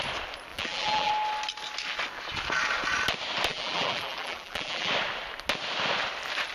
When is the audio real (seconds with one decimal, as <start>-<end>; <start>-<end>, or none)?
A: 0.0-0.5; 1.1-3.5; 4.9-6.5